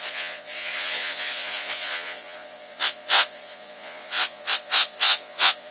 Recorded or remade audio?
remade